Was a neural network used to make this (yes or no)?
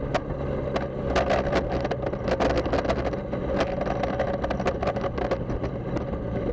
no